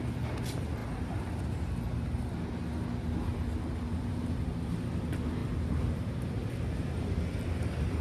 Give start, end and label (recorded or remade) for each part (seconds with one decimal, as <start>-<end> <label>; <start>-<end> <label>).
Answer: 0.0-0.8 recorded; 0.8-1.4 remade; 1.4-3.9 recorded; 3.9-4.8 remade; 4.8-5.4 recorded; 5.4-6.5 remade; 6.5-8.0 recorded